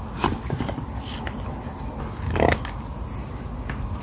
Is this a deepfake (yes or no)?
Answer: no